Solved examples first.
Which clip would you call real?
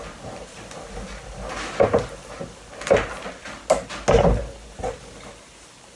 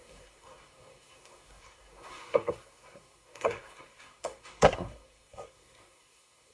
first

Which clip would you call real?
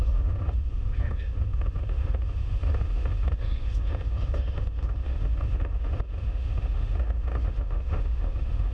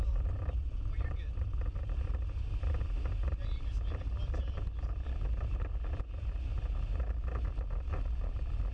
second